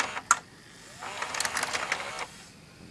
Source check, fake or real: real